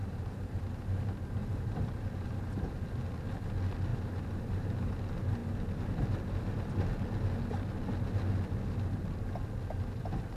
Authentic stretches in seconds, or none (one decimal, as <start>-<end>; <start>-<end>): 0.7-1.4; 2.7-3.9; 4.9-10.4